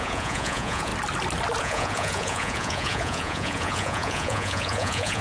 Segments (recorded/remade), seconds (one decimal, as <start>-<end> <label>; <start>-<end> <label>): 0.0-0.9 remade; 0.9-1.6 recorded; 1.6-5.2 remade